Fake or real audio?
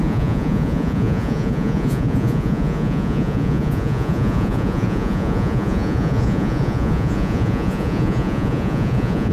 fake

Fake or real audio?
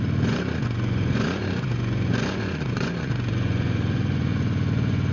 fake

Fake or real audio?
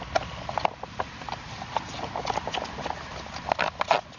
real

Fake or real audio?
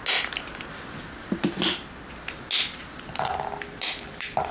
real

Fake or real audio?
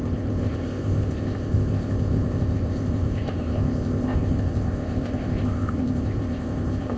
fake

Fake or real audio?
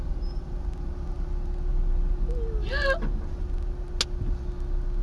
real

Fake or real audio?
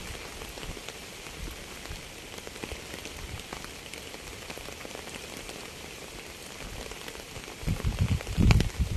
real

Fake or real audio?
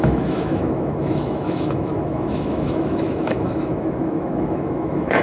fake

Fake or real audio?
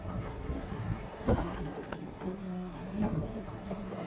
fake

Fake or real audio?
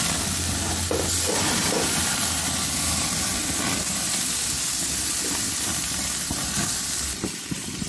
real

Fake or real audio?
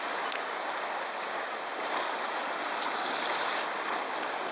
real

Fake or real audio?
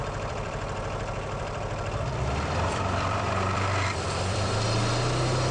fake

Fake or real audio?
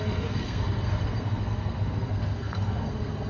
fake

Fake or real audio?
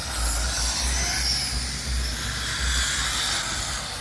real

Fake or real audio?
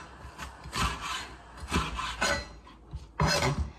real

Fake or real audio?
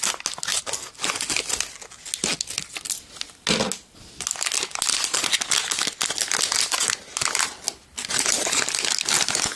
real